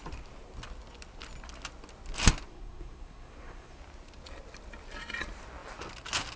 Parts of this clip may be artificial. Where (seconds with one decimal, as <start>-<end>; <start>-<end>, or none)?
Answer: 2.5-3.8